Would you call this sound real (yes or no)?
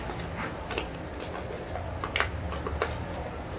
yes